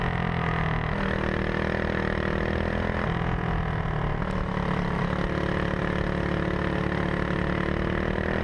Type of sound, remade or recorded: recorded